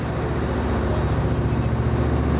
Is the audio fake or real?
real